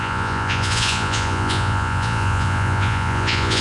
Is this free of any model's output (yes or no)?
no